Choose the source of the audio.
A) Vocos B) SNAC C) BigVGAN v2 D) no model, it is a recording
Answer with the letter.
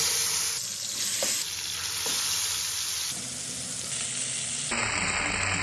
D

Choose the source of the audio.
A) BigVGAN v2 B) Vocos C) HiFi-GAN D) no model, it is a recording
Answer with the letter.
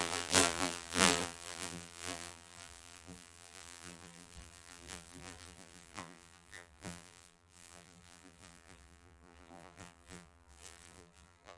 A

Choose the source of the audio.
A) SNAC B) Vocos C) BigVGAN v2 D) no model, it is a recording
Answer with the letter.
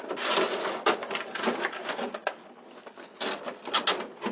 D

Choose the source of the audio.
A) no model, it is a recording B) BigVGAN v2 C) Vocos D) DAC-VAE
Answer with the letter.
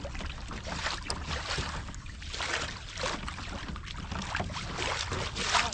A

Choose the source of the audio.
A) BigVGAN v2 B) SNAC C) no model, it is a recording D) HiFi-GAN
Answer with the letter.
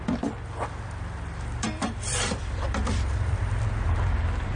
A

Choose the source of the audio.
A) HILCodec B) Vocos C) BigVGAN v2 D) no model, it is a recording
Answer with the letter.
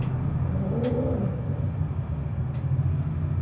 D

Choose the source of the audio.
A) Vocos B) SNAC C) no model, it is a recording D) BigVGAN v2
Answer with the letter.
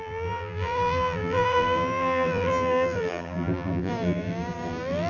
D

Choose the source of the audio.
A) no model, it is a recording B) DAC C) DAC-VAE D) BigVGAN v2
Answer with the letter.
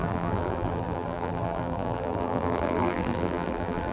D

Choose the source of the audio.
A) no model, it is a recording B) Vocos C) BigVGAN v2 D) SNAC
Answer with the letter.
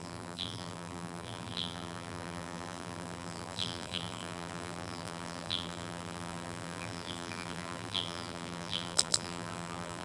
C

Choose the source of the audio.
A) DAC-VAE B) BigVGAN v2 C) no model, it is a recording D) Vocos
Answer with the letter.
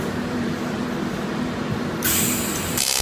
B